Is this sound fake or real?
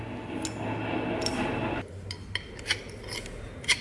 real